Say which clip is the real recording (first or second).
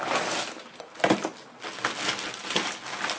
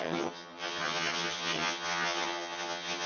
first